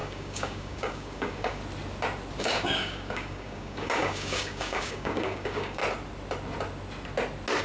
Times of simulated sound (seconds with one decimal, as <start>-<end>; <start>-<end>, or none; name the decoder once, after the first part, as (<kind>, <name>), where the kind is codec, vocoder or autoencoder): 0.0-1.6 (codec, DAC); 2.4-5.8